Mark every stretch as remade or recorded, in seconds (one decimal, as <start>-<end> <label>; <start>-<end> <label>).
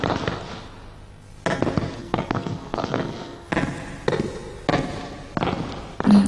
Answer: 0.0-2.0 recorded; 2.0-3.5 remade; 3.5-6.3 recorded